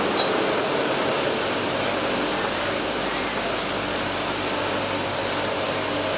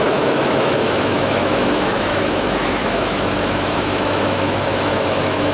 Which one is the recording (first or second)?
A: first